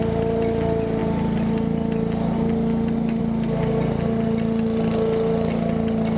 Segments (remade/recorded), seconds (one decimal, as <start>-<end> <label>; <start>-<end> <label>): 0.0-6.2 recorded